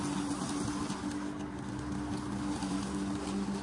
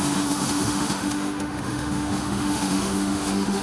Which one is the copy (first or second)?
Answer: second